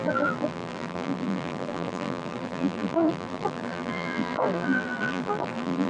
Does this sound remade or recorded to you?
remade